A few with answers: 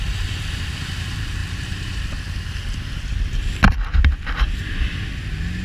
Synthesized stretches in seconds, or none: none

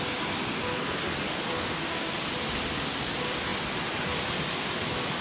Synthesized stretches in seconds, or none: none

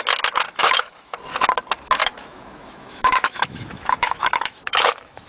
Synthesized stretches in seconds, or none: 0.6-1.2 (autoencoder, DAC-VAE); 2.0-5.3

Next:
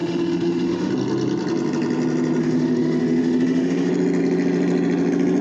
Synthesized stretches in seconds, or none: 0.0-0.9 (autoencoder, DAC-VAE); 2.4-3.9

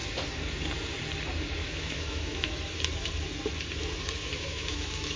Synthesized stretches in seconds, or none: 1.6-2.5 (autoencoder, DAC-VAE); 4.2-5.2